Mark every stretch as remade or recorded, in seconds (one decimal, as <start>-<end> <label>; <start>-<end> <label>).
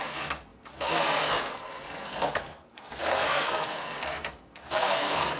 0.0-5.4 remade